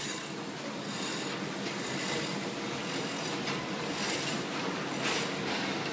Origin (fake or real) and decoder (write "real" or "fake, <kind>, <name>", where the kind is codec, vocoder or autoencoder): real